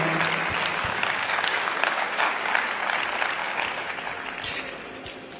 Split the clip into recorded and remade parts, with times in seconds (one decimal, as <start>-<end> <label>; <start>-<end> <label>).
0.0-0.8 recorded; 0.8-2.5 remade; 2.5-3.4 recorded; 3.4-3.9 remade; 3.9-5.4 recorded